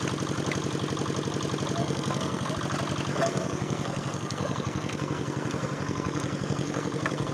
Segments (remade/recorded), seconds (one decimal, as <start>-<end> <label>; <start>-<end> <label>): 0.0-1.8 recorded; 1.8-2.5 remade; 2.5-3.1 recorded; 3.1-7.3 remade